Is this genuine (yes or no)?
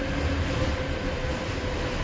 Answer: yes